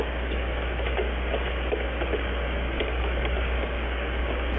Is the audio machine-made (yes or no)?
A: yes